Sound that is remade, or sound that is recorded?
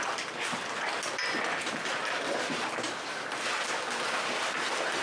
recorded